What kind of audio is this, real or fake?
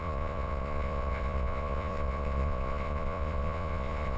fake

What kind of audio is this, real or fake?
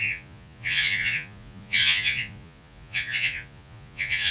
fake